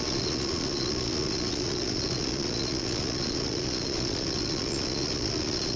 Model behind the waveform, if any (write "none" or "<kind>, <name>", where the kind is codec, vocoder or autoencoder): vocoder, Vocos